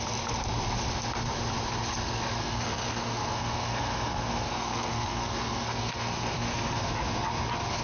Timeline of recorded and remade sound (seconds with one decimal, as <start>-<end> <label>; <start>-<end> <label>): 0.0-2.4 recorded; 2.4-6.9 remade; 6.9-7.8 recorded